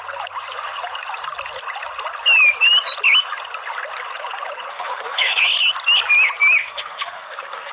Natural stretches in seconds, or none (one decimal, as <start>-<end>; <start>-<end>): 0.0-4.7; 5.4-6.6